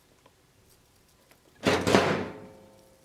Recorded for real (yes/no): yes